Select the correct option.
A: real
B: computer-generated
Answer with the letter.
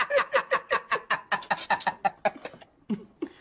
A